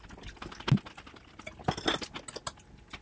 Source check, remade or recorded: recorded